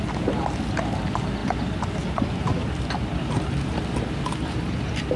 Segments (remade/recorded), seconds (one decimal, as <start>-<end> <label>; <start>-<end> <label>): 0.0-5.2 recorded